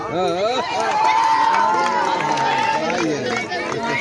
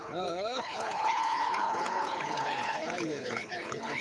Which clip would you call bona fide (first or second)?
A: first